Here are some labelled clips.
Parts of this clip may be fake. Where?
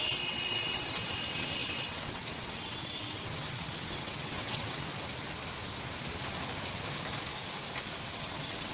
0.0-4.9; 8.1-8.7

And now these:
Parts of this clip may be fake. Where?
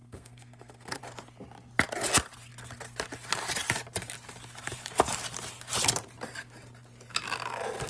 0.0-1.0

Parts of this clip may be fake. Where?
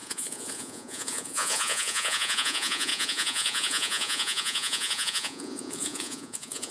0.0-6.7